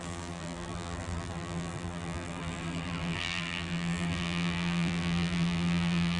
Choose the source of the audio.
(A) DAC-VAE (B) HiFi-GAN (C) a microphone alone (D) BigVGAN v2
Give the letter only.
D